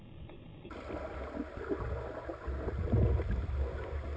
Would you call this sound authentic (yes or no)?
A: yes